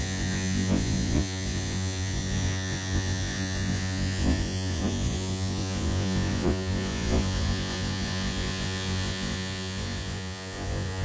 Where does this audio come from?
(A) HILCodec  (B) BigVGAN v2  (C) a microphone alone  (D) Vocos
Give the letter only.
D